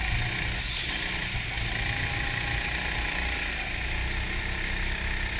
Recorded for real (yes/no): yes